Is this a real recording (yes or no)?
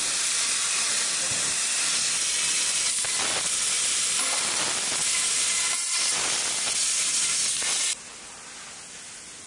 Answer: yes